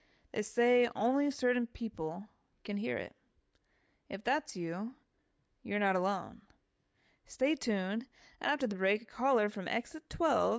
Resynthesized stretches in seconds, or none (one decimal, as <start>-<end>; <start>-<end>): 0.0-3.3; 5.5-7.0; 8.0-10.6